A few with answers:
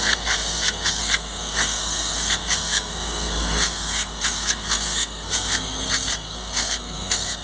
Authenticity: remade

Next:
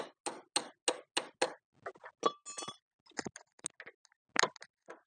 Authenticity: recorded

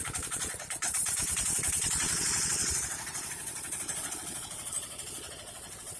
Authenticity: remade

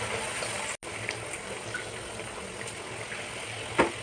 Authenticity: recorded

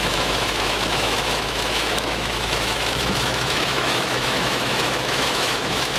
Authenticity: remade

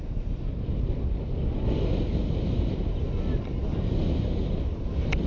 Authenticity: recorded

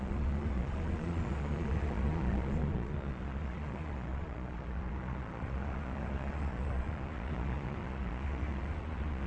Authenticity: remade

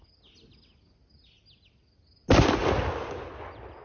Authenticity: recorded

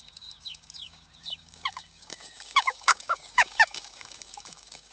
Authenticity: remade